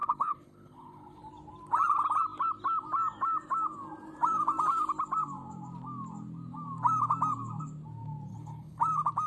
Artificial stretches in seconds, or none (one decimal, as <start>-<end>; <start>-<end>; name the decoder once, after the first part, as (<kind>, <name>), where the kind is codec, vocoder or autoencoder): 0.0-1.2 (codec, HILCodec); 8.3-8.8